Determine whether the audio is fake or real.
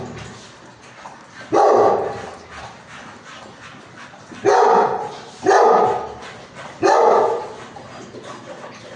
real